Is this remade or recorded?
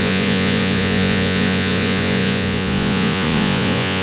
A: remade